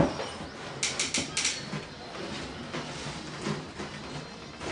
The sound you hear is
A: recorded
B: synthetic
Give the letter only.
A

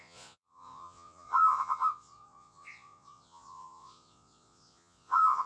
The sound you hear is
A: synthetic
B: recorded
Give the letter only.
A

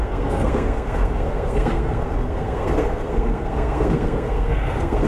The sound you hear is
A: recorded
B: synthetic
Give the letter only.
B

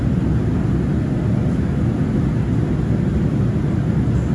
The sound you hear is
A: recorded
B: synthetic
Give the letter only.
A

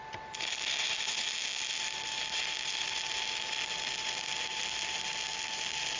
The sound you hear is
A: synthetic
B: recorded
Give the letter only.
B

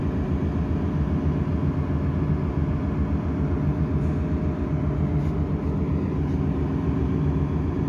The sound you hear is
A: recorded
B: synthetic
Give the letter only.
A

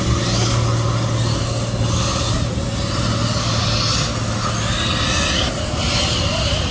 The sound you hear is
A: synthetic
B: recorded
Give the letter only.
B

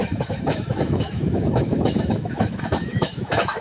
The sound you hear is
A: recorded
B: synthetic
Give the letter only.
B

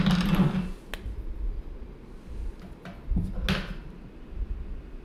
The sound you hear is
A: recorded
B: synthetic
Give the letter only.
A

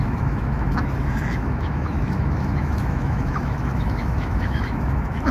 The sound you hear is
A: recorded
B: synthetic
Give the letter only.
B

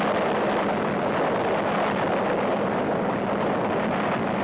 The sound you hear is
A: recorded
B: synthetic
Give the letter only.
A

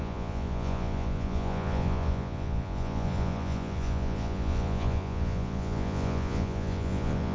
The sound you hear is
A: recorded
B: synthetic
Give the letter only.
B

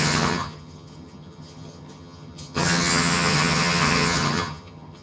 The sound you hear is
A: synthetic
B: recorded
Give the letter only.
A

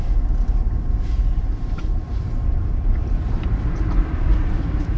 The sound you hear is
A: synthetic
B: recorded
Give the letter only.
A